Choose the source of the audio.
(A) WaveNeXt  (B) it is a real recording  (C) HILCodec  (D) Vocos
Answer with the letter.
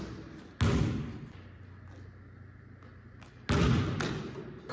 B